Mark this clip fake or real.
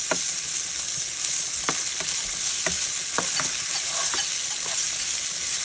real